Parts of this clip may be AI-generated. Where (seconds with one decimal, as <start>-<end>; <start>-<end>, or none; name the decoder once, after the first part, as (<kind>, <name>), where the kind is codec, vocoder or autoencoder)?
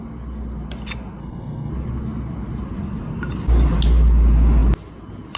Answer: 1.2-1.7 (codec, SNAC)